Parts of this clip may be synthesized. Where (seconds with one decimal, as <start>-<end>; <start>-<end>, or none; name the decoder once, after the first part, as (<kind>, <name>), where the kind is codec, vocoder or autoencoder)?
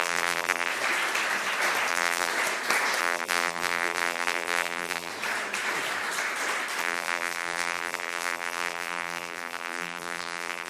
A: 0.0-0.7 (vocoder, BigVGAN v2); 1.9-2.3; 3.0-5.1; 6.8-10.7